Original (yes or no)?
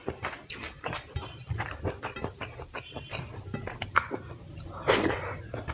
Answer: no